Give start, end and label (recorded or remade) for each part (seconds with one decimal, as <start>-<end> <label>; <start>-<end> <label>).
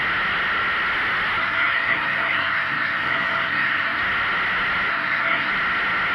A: 0.0-1.4 recorded; 1.4-4.0 remade; 4.0-4.9 recorded; 4.9-5.5 remade; 5.5-6.1 recorded